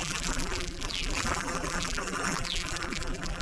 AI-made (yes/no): yes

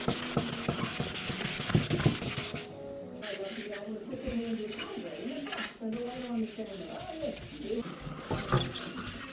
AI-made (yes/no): no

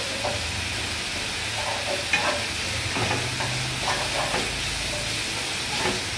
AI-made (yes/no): no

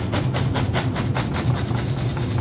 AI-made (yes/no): no